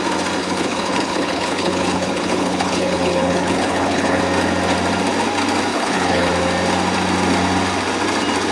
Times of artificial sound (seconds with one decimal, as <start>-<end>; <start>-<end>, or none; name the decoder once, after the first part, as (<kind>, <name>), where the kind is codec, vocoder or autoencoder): 0.4-4.2 (codec, HILCodec); 5.7-6.3

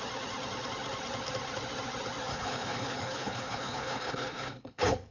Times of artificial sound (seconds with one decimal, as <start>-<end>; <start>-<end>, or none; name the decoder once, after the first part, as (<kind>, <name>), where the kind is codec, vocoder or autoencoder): 2.3-5.1 (codec, HILCodec)